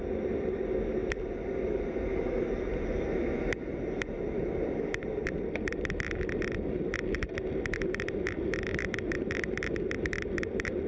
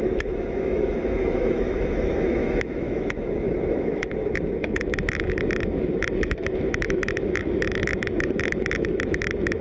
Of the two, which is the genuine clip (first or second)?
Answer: first